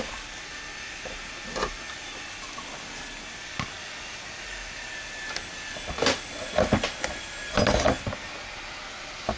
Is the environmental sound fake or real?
real